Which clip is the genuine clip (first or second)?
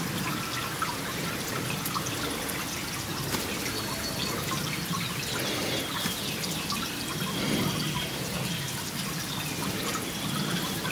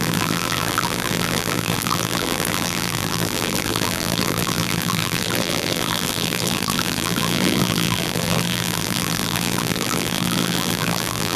first